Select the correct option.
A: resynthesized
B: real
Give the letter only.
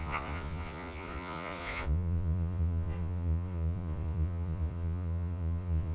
A